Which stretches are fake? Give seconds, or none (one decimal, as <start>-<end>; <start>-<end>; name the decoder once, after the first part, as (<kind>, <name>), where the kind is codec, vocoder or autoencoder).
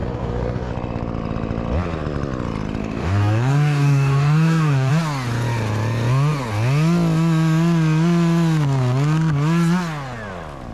0.0-0.7 (codec, DAC); 2.8-4.9